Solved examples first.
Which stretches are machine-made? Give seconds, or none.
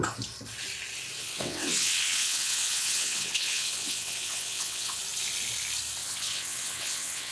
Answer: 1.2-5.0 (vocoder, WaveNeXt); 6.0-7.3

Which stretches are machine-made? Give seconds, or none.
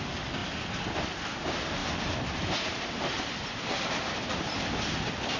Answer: 1.8-4.6 (vocoder, BigVGAN v2)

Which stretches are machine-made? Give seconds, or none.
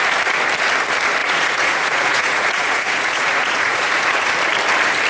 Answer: 1.2-4.3 (vocoder, Vocos)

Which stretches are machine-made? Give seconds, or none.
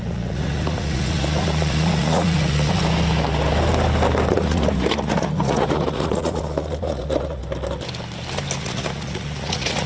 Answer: 0.0-2.8 (vocoder, Vocos); 4.3-7.4; 8.6-9.9